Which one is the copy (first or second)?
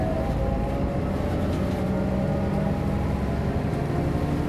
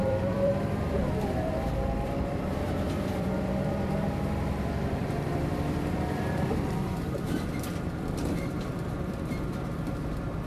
second